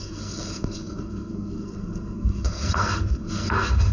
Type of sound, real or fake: fake